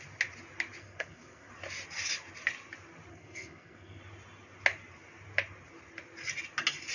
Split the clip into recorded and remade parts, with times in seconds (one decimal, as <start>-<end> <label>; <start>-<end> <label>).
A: 0.0-0.8 recorded; 0.8-1.5 remade; 1.5-3.1 recorded; 3.1-4.0 remade; 4.0-6.9 recorded